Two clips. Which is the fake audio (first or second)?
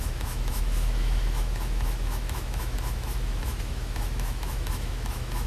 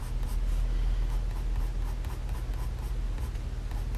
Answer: first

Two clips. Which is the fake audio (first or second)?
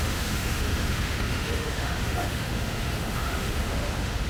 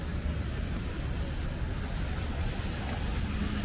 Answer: first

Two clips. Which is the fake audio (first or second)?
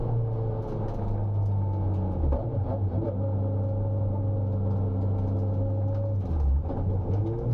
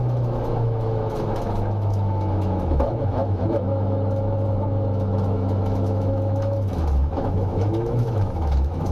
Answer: second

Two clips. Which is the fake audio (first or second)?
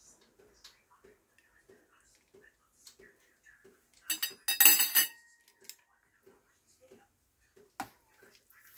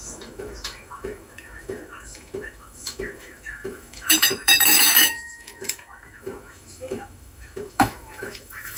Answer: second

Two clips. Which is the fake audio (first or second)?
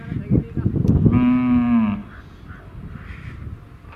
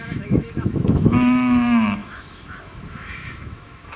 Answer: second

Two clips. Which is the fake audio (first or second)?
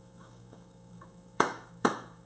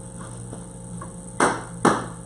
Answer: first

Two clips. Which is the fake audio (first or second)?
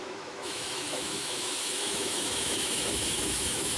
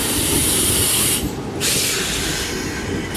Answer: first